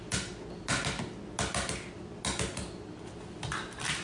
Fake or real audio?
real